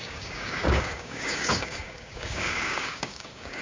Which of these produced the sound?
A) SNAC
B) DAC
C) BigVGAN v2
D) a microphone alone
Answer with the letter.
B